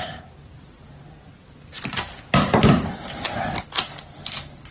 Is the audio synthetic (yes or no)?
yes